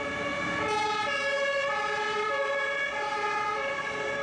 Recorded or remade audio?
recorded